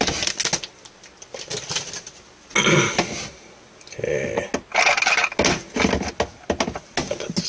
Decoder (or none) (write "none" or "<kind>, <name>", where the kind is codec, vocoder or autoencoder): none